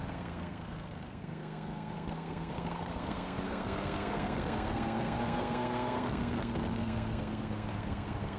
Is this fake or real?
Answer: fake